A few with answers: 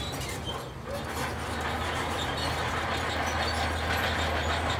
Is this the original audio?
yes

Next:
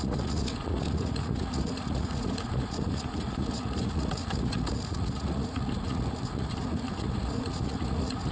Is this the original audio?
no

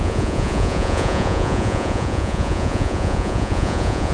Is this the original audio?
no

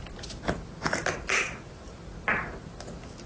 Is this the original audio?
yes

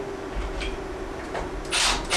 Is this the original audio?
yes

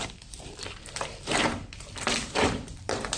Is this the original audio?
no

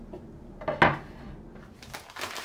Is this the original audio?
yes